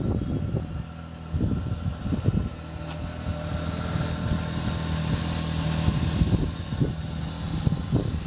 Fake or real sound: real